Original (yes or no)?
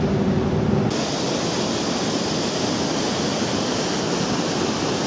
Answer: yes